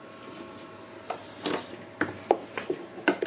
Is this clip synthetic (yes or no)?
no